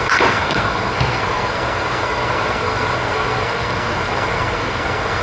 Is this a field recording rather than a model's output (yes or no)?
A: no